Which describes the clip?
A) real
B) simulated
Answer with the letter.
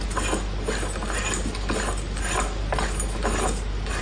A